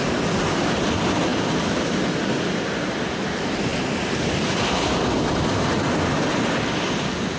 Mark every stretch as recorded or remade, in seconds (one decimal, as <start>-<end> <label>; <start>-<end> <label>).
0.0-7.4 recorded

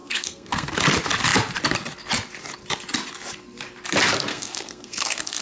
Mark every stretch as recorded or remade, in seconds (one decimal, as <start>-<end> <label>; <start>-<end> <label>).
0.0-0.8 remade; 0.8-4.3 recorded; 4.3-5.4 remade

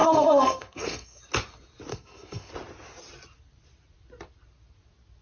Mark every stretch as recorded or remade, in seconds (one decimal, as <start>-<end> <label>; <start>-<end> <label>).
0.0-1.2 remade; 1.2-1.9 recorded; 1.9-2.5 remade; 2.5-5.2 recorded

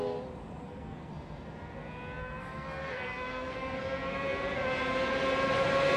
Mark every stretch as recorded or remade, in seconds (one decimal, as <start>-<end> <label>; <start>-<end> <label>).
0.0-0.6 recorded; 0.6-1.1 remade; 1.1-2.2 recorded; 2.2-3.8 remade; 3.8-6.0 recorded

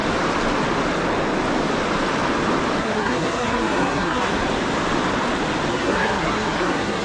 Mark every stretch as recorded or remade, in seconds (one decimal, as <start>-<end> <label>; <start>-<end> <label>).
0.0-2.8 recorded; 2.8-4.3 remade; 4.3-5.7 recorded; 5.7-7.0 remade

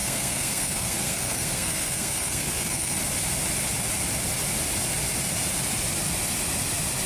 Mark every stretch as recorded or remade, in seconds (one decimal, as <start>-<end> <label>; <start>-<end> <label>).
0.0-3.0 remade; 3.0-7.1 recorded